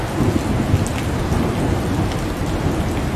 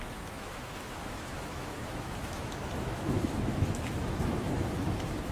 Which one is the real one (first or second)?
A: first